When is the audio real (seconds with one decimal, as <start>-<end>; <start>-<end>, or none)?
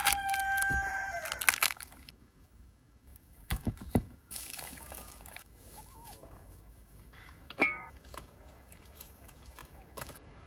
0.0-1.5